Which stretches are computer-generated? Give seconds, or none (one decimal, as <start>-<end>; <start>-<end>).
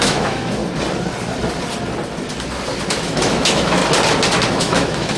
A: 0.0-0.6; 2.9-3.8; 4.5-5.2